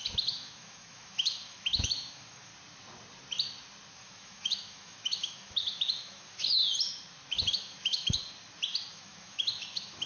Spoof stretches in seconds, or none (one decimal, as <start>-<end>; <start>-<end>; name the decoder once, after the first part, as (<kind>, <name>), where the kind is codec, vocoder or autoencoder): 0.0-2.5 (autoencoder, DAC-VAE); 3.9-6.6; 7.3-8.2; 8.9-10.1